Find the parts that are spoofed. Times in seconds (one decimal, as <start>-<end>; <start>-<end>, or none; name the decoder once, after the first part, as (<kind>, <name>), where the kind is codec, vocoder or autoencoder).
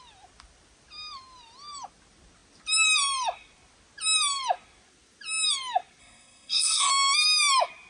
6.0-6.9 (codec, SNAC)